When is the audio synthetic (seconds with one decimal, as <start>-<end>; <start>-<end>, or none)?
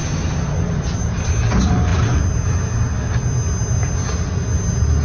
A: none